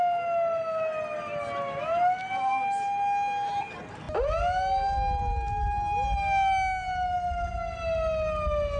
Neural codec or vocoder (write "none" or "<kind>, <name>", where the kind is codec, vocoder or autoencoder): none